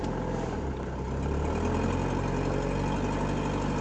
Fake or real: real